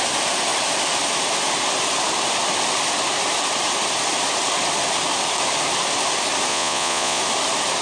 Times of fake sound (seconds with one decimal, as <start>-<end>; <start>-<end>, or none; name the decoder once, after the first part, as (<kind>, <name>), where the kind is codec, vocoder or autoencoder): 6.5-7.2 (vocoder, Vocos)